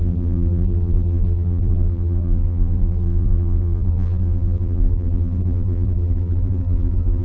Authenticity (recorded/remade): remade